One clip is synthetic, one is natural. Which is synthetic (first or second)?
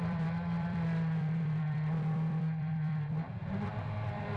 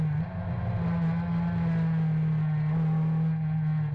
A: first